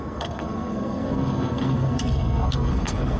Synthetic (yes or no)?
yes